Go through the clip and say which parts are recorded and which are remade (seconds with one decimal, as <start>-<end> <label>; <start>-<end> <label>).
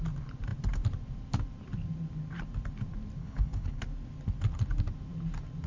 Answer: 0.0-3.2 recorded; 3.2-3.8 remade; 3.8-5.7 recorded